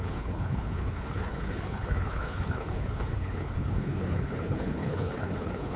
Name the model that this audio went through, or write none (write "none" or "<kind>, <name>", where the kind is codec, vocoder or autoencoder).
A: codec, HILCodec